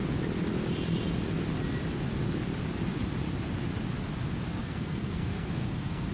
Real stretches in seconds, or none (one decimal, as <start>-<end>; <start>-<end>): 0.0-4.6